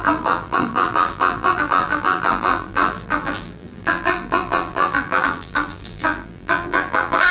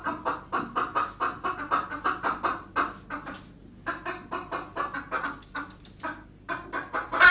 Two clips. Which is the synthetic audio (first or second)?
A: first